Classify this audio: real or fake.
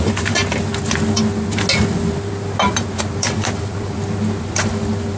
real